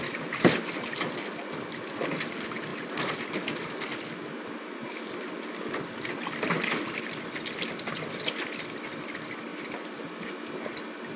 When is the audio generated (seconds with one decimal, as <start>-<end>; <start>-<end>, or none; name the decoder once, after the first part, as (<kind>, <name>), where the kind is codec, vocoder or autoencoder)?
none